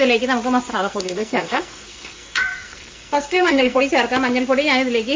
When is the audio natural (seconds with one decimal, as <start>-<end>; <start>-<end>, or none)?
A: 0.0-0.7; 3.8-5.2